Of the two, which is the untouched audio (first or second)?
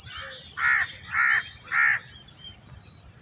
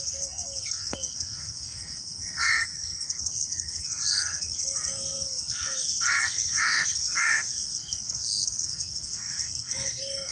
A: first